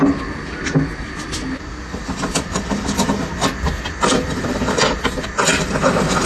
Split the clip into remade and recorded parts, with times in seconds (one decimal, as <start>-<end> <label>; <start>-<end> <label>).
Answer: 0.0-3.4 recorded; 3.4-5.7 remade; 5.7-6.3 recorded